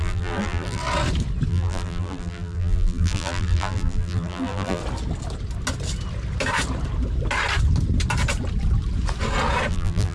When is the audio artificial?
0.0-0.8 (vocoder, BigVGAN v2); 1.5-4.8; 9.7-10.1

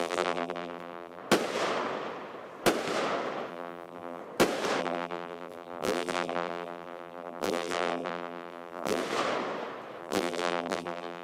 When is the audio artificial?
0.0-1.2 (vocoder, BigVGAN v2); 3.5-4.2; 4.8-9.0; 10.0-11.2

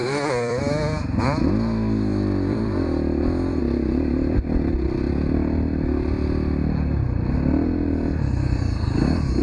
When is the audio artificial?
0.0-0.6 (vocoder, BigVGAN v2); 2.1-3.6

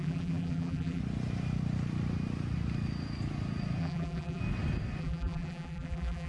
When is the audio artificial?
0.0-1.0 (vocoder, BigVGAN v2); 3.8-4.4; 5.0-6.3

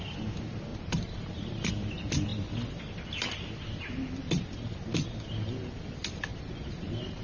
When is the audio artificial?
0.7-1.7 (vocoder, BigVGAN v2); 6.3-7.2

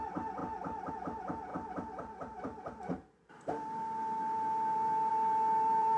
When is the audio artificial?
0.0-0.4 (vocoder, BigVGAN v2); 0.9-6.0

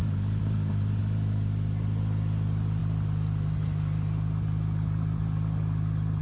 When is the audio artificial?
0.0-1.0 (vocoder, BigVGAN v2)

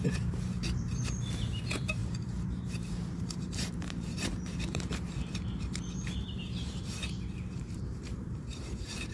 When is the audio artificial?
0.0-9.1 (vocoder, BigVGAN v2)